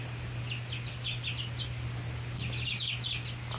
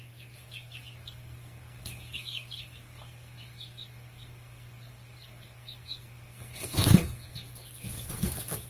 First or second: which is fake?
second